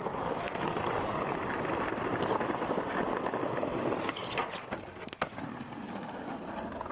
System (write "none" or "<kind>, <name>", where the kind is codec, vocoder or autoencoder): none